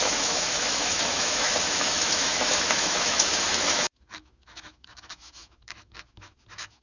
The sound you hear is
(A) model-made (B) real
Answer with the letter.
A